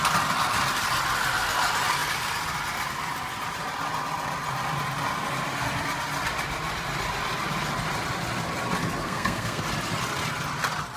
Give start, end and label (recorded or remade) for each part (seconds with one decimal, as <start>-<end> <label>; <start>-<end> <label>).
0.0-9.0 recorded; 9.0-9.6 remade; 9.6-11.0 recorded